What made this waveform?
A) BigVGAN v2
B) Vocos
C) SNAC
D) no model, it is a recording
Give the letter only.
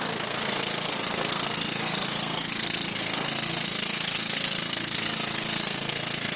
C